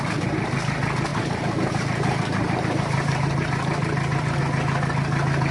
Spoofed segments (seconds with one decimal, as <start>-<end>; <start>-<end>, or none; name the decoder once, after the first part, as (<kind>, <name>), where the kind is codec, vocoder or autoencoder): 1.1-4.4 (vocoder, BigVGAN v2)